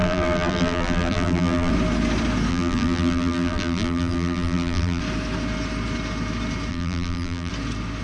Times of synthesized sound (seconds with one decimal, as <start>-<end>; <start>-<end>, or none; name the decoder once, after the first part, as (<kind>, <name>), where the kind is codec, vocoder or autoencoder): 0.0-1.7 (vocoder, BigVGAN v2); 2.5-5.0; 6.7-7.5